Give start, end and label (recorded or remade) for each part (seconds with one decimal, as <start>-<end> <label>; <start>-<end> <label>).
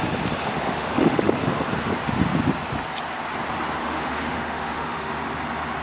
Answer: 0.0-0.4 recorded; 0.4-1.7 remade; 1.7-3.8 recorded; 3.8-5.2 remade; 5.2-5.8 recorded